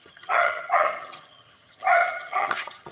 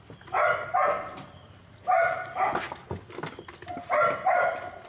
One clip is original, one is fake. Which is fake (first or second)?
first